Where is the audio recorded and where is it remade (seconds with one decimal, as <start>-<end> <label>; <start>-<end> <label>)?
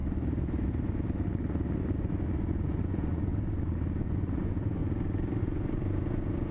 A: 0.0-2.5 recorded; 2.5-3.3 remade; 3.3-4.1 recorded; 4.1-4.8 remade; 4.8-5.4 recorded; 5.4-6.5 remade